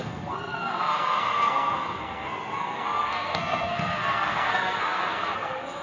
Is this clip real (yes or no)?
no